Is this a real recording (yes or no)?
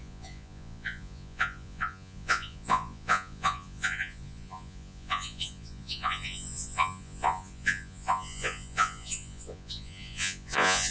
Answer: no